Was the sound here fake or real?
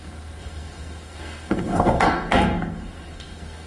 fake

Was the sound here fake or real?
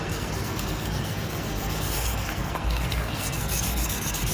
fake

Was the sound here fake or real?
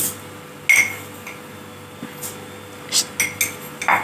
real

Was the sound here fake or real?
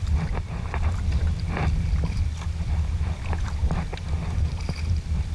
real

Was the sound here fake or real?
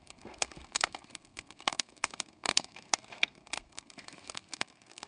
fake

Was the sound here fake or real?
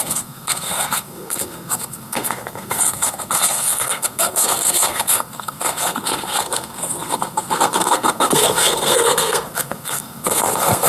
fake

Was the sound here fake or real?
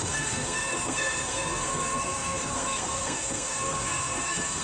fake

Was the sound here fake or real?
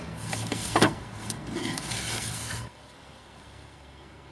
fake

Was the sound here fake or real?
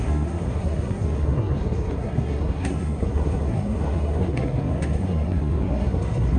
fake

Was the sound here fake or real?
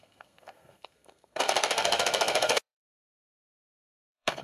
fake